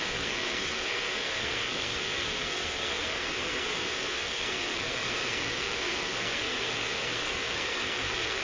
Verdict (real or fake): fake